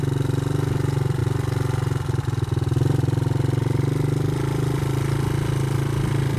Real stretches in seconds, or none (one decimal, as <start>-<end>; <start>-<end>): 0.0-6.4